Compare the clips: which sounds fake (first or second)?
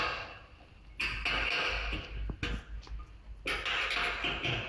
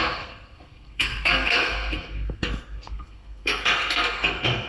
second